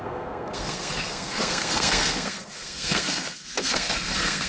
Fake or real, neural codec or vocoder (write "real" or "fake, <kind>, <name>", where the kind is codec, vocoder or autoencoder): fake, codec, SNAC